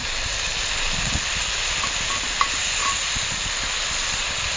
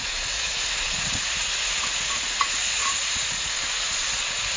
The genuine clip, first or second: first